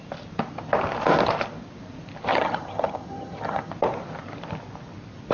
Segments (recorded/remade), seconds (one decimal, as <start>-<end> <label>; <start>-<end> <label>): 0.0-2.3 recorded; 2.3-3.7 remade; 3.7-5.3 recorded